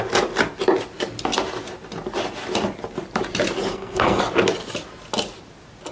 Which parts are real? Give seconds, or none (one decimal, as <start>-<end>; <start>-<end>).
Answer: 0.0-3.7; 4.2-5.9